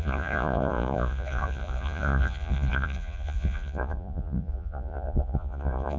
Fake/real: fake